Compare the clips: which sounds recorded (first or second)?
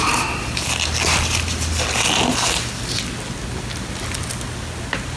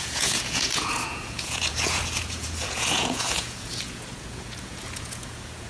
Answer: first